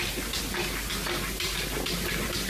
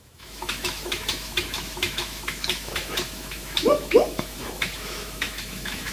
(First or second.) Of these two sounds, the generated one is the second